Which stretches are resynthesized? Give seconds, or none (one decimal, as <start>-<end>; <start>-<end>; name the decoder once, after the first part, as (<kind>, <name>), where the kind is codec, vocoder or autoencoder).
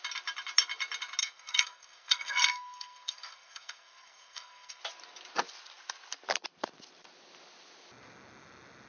1.2-4.8 (codec, SNAC)